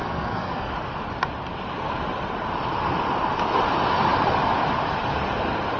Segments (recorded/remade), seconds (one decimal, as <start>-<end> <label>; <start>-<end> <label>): 0.0-0.7 remade; 0.7-5.8 recorded